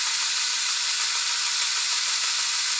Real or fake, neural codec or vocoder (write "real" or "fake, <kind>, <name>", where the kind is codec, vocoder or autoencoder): real